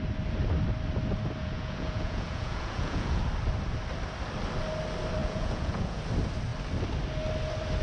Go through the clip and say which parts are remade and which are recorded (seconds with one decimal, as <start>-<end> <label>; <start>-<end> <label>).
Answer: 0.0-1.4 recorded; 1.4-3.2 remade; 3.2-5.2 recorded; 5.2-6.0 remade; 6.0-7.8 recorded